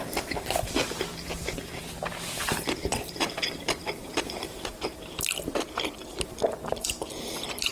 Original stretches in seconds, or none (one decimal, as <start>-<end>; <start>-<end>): 1.1-1.8